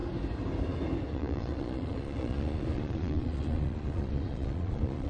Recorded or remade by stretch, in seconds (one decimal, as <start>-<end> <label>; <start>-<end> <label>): 0.0-1.1 recorded; 1.1-5.1 remade